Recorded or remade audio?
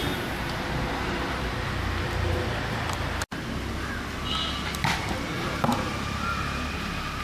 recorded